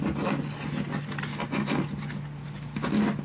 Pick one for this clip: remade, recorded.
recorded